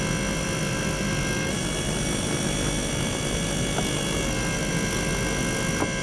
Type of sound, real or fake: real